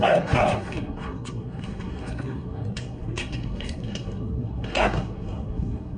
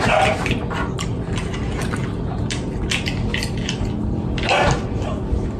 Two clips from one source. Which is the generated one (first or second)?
first